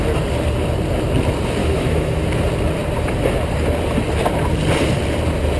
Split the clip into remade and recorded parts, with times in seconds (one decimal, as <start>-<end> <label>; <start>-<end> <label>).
0.0-1.6 recorded; 1.6-2.2 remade; 2.2-5.6 recorded